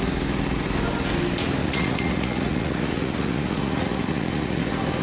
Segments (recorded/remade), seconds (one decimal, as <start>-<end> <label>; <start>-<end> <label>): 0.0-1.6 recorded; 1.6-4.6 remade; 4.6-5.0 recorded